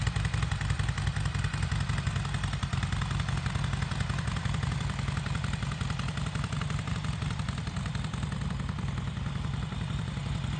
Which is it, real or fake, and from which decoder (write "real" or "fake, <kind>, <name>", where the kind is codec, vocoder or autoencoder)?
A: real